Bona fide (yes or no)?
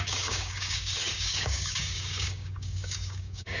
no